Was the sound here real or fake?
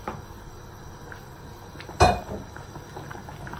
real